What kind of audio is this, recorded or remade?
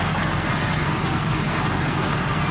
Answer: remade